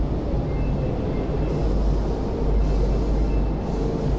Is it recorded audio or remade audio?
recorded